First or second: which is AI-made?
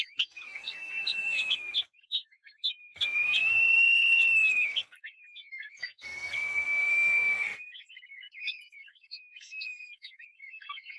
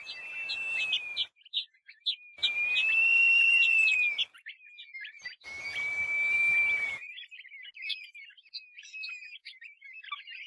first